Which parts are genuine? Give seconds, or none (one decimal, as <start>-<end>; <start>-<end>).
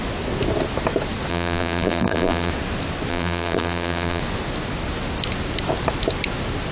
0.0-1.3; 2.5-3.1; 4.2-6.7